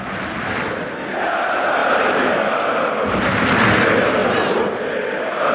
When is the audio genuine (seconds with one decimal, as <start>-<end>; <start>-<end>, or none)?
0.0-1.8; 2.3-4.2; 4.7-5.5